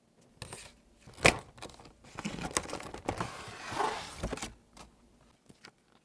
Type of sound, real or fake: real